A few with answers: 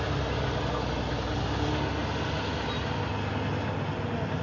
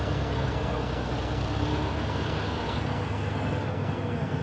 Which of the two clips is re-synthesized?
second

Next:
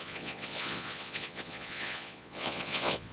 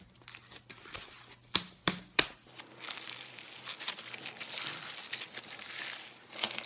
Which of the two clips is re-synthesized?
first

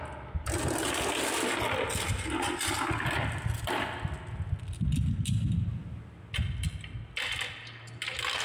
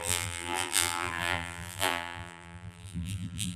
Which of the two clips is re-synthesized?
second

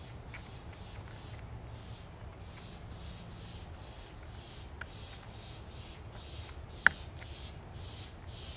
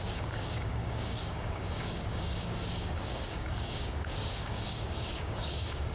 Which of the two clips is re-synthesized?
second